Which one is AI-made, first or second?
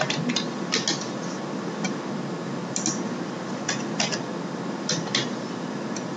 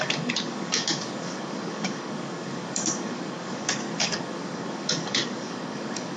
second